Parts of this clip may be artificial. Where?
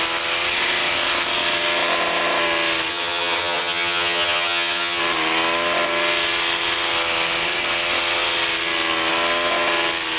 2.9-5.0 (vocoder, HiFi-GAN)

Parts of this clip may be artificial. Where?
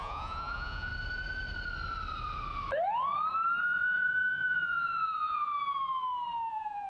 0.0-0.9 (vocoder, Vocos); 3.6-5.5; 6.5-6.9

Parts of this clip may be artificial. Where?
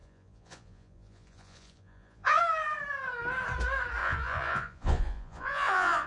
0.0-2.4 (vocoder, Vocos); 4.0-6.1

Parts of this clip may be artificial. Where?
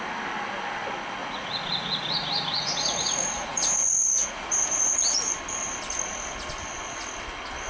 1.2-5.3 (vocoder, Vocos)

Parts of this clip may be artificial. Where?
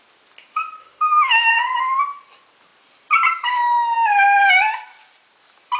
0.8-1.5 (autoencoder, DAC-VAE)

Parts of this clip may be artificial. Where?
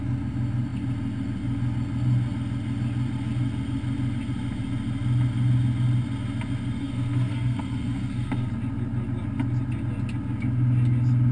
6.8-8.5 (codec, SNAC)